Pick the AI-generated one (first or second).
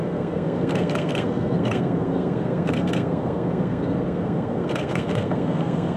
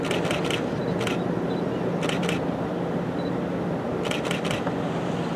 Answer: first